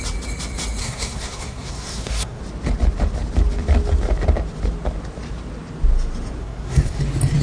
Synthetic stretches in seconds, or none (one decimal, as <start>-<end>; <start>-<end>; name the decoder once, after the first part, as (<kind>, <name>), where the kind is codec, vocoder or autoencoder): 0.8-2.4 (codec, SNAC); 6.4-7.0